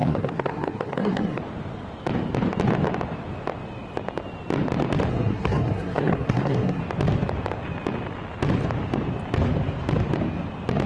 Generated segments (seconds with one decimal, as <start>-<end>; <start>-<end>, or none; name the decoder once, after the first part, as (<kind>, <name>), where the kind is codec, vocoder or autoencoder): 0.0-1.4 (codec, SNAC); 5.1-6.8